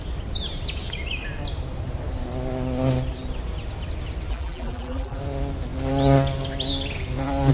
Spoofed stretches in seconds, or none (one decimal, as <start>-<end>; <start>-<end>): 4.3-5.2

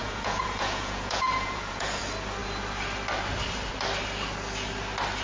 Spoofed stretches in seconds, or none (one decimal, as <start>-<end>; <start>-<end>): 0.0-2.0

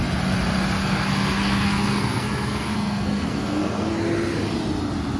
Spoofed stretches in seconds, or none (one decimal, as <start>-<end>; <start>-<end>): 0.8-3.9